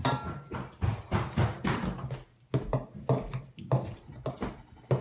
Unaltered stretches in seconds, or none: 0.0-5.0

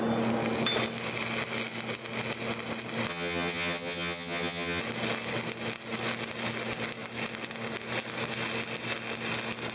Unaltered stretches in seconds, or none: 0.0-3.1; 4.8-9.7

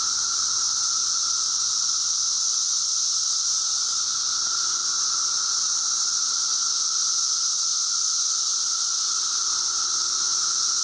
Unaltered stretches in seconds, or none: 0.0-1.0; 3.3-10.8

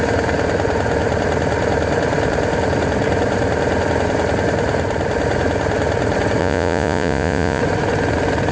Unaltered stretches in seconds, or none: 0.0-6.4; 7.6-8.5